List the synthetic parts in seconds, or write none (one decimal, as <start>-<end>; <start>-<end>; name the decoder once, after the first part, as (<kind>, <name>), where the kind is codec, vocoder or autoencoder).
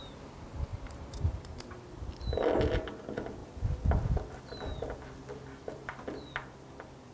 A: 0.7-1.6 (vocoder, BigVGAN v2)